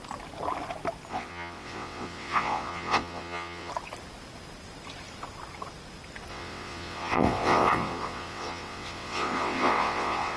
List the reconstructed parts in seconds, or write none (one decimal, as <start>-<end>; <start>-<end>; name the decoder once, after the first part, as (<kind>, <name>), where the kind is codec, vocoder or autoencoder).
1.1-3.7 (vocoder, WaveNeXt); 6.3-10.4